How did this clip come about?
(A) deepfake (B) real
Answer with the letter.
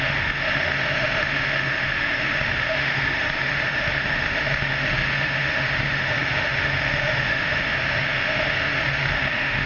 A